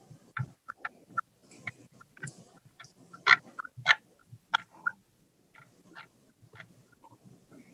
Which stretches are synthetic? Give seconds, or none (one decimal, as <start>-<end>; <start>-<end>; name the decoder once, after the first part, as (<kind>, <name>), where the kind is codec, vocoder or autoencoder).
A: 0.0-4.2 (vocoder, BigVGAN v2)

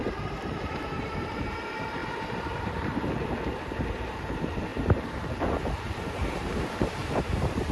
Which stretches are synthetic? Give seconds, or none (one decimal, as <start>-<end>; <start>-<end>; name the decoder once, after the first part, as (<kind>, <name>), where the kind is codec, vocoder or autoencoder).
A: 0.0-7.7 (vocoder, BigVGAN v2)

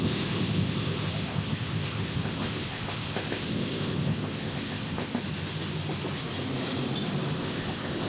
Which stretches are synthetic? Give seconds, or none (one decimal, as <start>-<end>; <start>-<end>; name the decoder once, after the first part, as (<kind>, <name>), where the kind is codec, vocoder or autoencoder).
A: 0.0-5.2 (codec, ZipCodec); 7.4-8.1